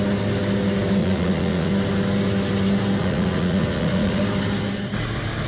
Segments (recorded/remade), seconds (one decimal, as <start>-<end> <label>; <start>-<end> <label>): 0.0-1.0 recorded; 1.0-1.7 remade; 1.7-3.0 recorded; 3.0-4.2 remade; 4.2-5.5 recorded